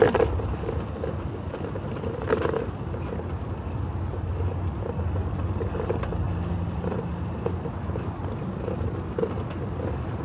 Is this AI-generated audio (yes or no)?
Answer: no